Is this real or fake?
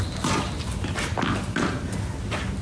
real